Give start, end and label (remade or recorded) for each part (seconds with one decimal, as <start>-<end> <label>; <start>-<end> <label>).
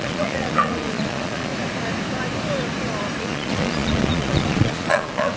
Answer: 0.0-1.5 remade; 1.5-3.2 recorded; 3.2-5.4 remade